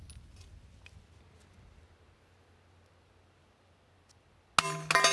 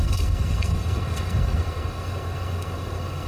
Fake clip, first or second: second